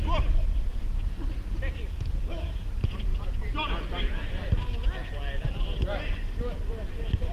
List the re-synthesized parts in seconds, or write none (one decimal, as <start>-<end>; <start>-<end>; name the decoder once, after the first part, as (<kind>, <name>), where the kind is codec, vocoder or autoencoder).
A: 3.1-3.9 (vocoder, BigVGAN v2)